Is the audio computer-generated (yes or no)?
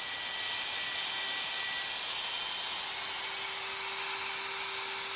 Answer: no